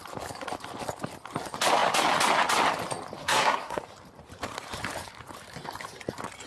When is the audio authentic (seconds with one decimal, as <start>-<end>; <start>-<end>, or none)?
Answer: 0.0-3.2; 3.8-6.5